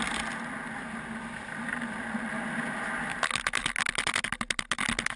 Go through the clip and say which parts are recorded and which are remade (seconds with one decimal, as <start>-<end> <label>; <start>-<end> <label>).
0.0-5.2 recorded